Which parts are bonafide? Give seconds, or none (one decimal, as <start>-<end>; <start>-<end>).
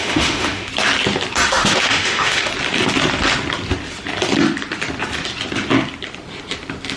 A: 0.7-1.5; 2.5-7.0